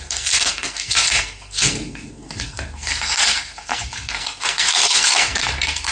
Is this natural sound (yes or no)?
no